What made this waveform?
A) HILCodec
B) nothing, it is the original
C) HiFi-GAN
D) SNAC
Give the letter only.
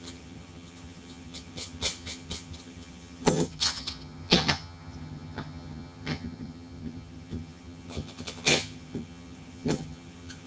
C